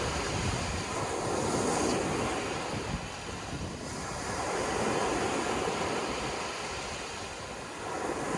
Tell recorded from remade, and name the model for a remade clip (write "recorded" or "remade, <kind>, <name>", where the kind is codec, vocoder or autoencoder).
recorded